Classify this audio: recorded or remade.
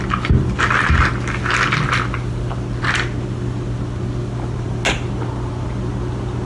recorded